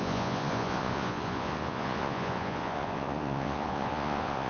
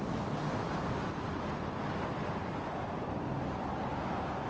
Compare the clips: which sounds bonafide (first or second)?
second